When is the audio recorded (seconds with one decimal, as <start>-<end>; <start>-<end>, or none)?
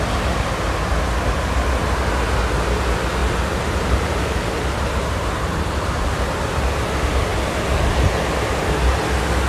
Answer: 0.0-3.2; 6.7-9.5